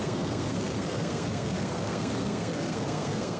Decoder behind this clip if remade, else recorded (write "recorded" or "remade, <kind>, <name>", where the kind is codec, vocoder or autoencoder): remade, codec, SNAC